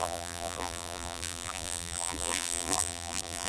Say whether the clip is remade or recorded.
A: remade